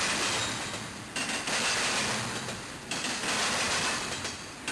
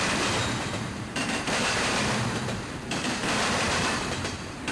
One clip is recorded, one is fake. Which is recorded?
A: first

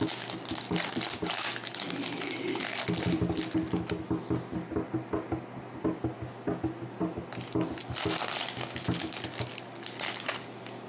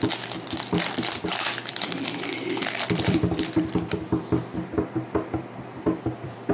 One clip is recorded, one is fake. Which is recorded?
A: first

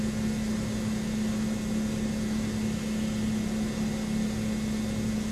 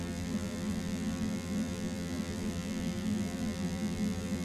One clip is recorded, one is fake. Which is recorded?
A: first